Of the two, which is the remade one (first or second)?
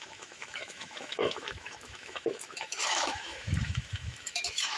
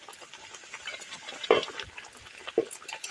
first